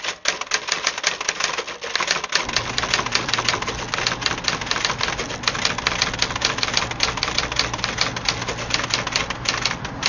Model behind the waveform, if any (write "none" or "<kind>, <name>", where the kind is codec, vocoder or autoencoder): none